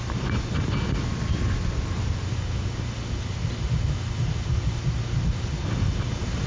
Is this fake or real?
real